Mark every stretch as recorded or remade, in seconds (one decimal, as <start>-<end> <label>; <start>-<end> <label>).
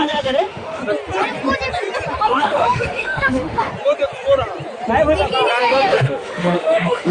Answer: 0.0-0.8 remade; 0.8-2.2 recorded; 2.2-3.7 remade; 3.7-5.6 recorded; 5.6-7.1 remade